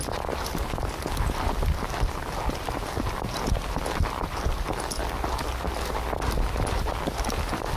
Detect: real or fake real